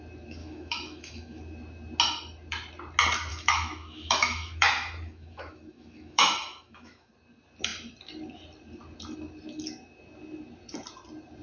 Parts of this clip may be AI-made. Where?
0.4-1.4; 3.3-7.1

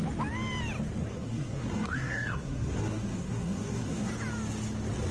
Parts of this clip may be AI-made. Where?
1.0-4.1